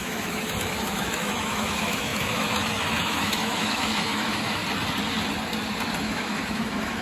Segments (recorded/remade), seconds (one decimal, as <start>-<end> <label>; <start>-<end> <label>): 0.0-4.6 remade; 4.6-6.0 recorded; 6.0-7.0 remade